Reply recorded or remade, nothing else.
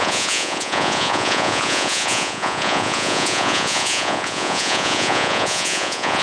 remade